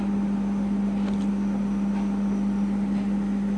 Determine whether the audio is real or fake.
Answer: real